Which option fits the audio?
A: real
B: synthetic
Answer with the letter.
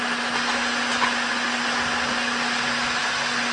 A